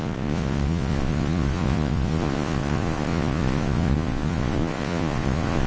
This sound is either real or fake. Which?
fake